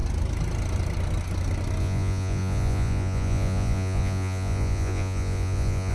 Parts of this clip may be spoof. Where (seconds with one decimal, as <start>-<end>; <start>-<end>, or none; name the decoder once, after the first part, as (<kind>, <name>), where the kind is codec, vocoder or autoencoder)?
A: 1.8-5.9 (vocoder, Vocos)